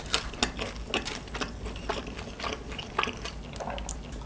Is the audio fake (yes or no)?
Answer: no